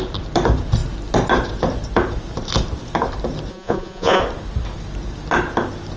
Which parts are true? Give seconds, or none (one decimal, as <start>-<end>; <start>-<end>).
0.0-3.5; 4.2-6.0